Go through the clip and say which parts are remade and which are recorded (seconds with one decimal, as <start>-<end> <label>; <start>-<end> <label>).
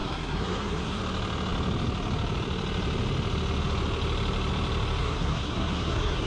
0.0-1.0 remade; 1.0-5.0 recorded; 5.0-6.3 remade